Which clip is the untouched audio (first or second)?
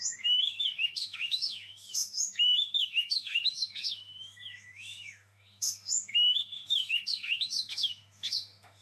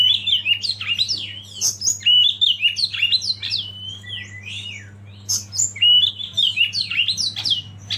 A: second